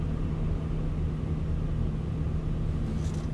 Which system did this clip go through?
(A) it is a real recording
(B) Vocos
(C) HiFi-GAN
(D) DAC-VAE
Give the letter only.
A